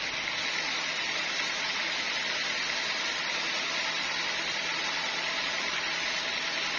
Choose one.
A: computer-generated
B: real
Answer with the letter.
B